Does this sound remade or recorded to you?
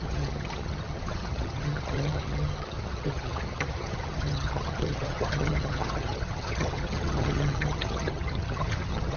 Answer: remade